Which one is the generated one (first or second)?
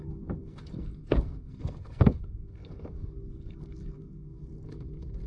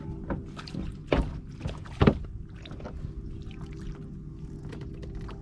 first